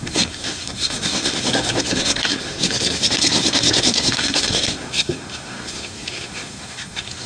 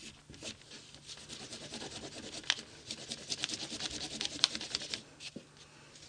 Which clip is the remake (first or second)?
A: first